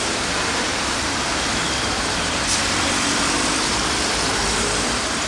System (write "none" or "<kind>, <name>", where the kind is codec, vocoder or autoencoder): vocoder, BigVGAN v2